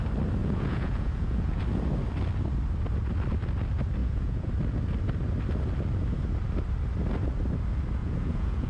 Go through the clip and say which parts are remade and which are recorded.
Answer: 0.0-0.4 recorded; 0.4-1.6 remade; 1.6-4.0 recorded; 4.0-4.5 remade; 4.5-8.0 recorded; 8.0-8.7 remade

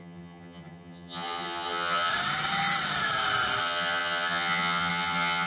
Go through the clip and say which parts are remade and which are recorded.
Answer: 0.0-2.1 remade; 2.1-3.6 recorded; 3.6-5.5 remade

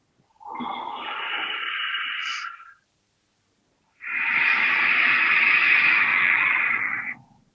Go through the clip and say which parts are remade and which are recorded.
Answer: 0.0-6.1 recorded; 6.1-7.5 remade

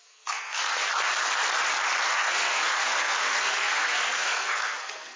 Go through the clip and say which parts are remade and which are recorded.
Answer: 0.0-0.9 remade; 0.9-2.1 recorded; 2.1-5.2 remade

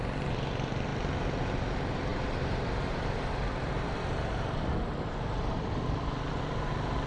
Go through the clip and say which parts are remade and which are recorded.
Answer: 0.0-2.1 recorded; 2.1-6.3 remade; 6.3-7.1 recorded